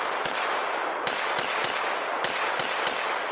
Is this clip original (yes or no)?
yes